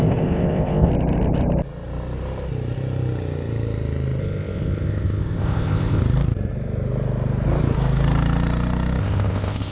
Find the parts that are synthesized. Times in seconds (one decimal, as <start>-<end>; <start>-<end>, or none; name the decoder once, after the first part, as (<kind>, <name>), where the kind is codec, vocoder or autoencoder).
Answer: 0.0-0.9 (codec, ZipCodec); 4.2-6.0; 9.0-9.7